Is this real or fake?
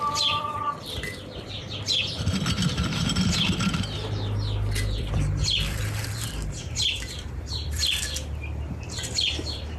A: fake